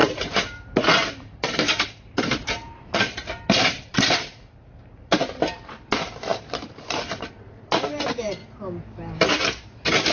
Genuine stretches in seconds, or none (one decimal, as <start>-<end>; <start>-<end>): 8.4-9.3